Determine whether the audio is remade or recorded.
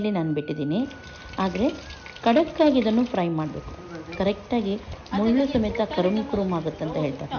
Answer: recorded